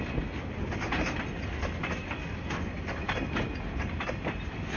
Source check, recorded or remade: recorded